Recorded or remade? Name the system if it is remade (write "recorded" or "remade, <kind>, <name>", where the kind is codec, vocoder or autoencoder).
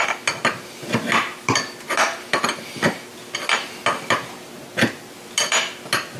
recorded